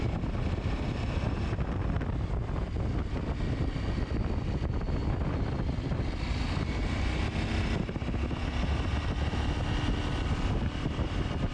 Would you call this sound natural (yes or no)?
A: yes